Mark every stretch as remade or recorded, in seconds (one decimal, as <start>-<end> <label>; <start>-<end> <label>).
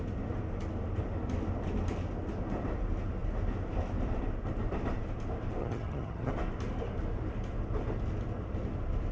0.0-5.6 recorded; 5.6-6.3 remade; 6.3-9.1 recorded